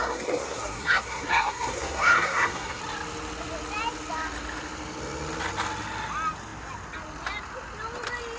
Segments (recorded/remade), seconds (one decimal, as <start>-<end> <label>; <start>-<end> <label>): 0.0-2.8 remade; 2.8-8.4 recorded

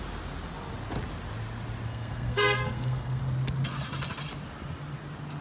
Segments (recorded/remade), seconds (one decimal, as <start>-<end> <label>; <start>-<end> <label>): 0.0-1.9 recorded; 1.9-3.2 remade; 3.2-5.4 recorded

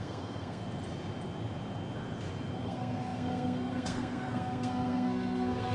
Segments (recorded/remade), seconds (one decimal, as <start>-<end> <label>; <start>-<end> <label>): 0.0-0.6 remade; 0.6-2.6 recorded; 2.6-5.7 remade

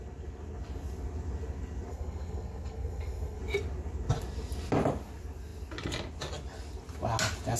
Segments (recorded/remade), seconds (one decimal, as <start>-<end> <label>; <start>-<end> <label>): 0.0-1.9 recorded; 1.9-3.4 remade; 3.4-7.6 recorded